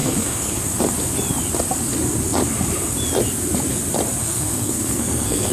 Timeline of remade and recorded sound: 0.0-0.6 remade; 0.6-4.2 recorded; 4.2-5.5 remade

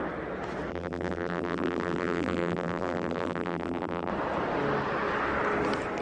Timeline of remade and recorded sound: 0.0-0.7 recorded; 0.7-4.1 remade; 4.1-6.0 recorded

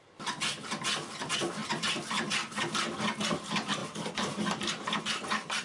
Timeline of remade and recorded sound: 0.0-1.6 recorded; 1.6-2.6 remade; 2.6-5.6 recorded

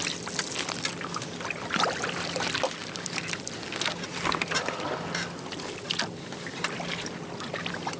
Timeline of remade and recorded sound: 0.0-2.8 recorded; 2.8-4.7 remade; 4.7-8.0 recorded

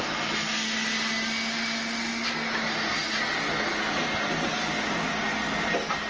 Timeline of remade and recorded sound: 0.0-6.1 recorded

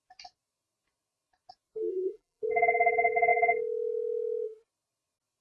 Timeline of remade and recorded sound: 0.0-1.9 recorded; 1.9-2.4 remade; 2.4-5.4 recorded